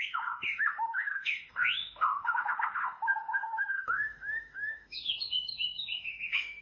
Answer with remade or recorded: remade